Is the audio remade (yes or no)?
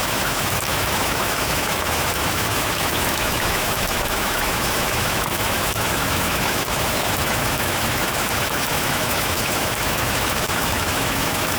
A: yes